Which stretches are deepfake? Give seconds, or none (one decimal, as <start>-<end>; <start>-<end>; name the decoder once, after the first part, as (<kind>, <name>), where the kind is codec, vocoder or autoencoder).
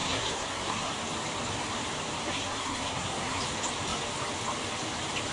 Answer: 0.0-0.9 (codec, SNAC); 2.3-3.4